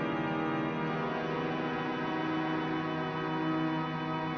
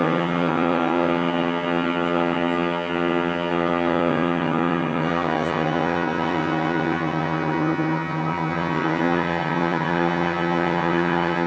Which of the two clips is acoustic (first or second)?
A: first